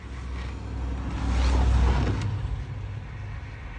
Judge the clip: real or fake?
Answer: real